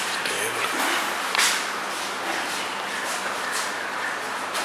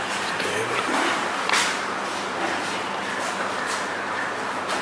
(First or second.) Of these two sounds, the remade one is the second